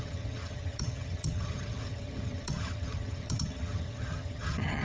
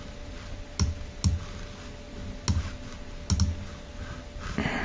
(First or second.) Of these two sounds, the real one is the second